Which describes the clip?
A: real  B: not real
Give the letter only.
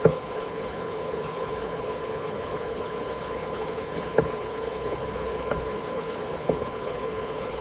B